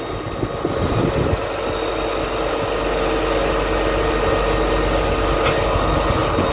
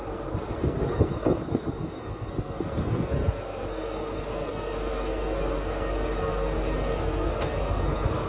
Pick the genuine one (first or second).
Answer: first